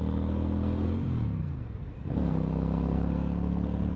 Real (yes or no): no